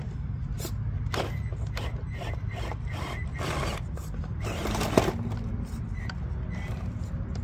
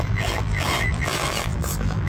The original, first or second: first